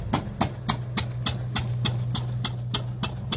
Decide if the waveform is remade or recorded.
recorded